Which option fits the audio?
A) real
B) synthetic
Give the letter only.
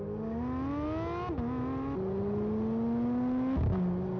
A